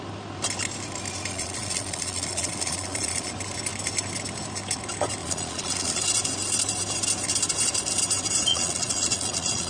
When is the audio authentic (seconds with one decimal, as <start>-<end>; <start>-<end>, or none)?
0.0-1.3; 3.3-5.2; 6.0-8.5

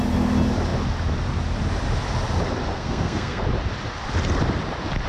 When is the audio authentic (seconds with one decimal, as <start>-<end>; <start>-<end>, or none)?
0.0-2.7; 3.4-5.1

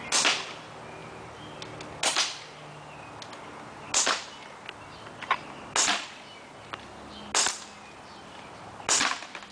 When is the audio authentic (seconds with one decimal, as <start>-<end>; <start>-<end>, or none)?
0.0-9.5

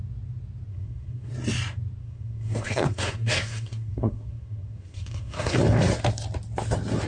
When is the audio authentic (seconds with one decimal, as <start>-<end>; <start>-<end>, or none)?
0.0-0.7; 1.3-2.0; 5.6-7.1

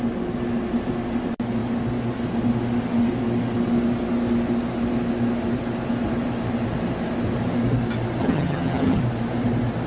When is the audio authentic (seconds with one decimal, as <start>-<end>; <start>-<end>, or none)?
0.0-8.2; 9.0-9.9

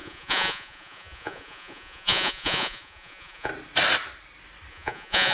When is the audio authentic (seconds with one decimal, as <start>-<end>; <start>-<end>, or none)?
3.5-4.7

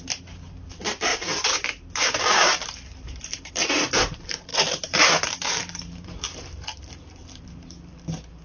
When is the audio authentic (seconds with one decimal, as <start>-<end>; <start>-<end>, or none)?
0.0-1.1; 3.5-4.5; 7.9-8.4